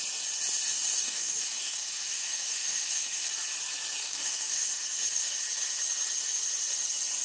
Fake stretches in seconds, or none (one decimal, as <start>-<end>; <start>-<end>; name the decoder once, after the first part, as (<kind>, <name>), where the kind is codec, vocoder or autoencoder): 0.7-3.3 (codec, DAC); 4.0-5.4